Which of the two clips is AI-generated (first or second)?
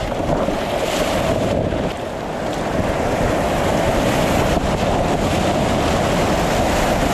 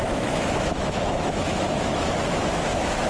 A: second